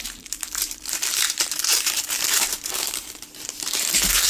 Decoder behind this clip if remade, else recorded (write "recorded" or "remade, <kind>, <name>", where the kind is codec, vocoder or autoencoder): remade, vocoder, BigVGAN v2